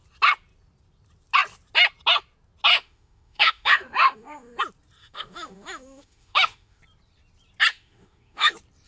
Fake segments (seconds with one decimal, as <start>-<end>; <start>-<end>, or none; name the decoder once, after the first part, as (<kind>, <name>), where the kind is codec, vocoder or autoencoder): 2.7-4.6 (autoencoder, DAC-VAE); 5.0-6.8; 7.7-8.5